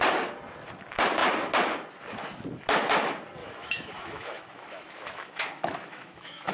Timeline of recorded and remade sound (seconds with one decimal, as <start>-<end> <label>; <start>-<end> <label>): 0.0-3.4 recorded; 3.4-6.5 remade